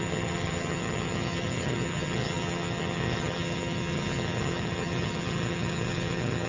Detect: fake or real fake